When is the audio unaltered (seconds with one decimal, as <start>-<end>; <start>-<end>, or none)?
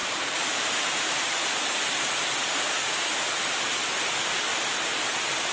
2.7-5.5